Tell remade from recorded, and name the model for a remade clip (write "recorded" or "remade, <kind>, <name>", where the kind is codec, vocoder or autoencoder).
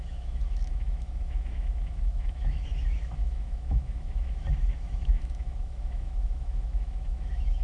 remade, autoencoder, DAC-VAE